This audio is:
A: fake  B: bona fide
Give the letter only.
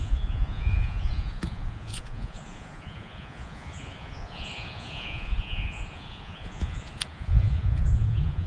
A